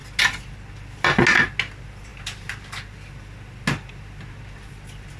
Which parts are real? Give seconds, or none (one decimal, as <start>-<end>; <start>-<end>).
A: 0.0-5.2